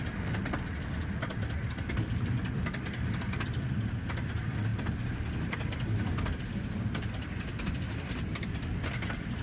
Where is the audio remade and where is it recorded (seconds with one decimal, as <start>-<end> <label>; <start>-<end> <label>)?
0.0-9.4 recorded